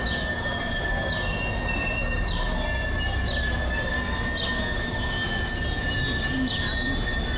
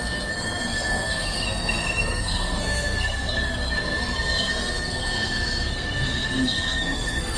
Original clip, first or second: first